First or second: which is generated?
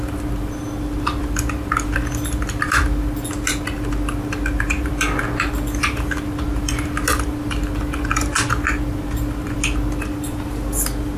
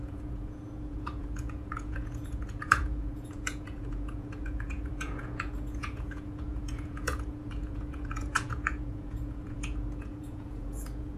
second